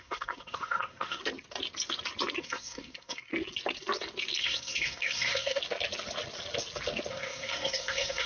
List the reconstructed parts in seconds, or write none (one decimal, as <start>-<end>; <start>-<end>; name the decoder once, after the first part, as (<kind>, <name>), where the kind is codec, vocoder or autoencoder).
0.0-1.2 (codec, SNAC); 2.4-3.3; 4.4-5.6; 7.1-8.3